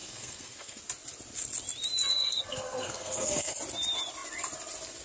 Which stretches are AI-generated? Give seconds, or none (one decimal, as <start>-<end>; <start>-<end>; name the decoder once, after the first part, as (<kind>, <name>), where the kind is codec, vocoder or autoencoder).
0.0-0.8 (codec, SNAC); 2.1-3.5